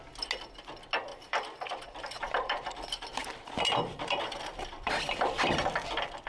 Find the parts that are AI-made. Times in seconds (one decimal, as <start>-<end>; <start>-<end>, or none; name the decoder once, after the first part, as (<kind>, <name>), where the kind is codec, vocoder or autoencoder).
1.1-4.9 (vocoder, BigVGAN v2)